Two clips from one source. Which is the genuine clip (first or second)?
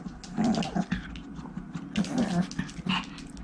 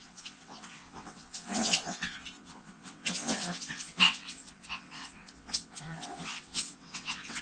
first